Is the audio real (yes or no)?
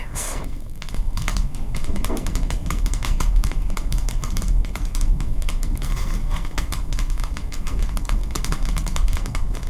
no